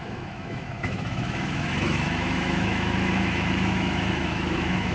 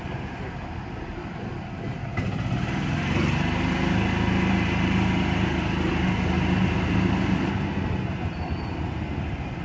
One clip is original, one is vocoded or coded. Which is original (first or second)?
second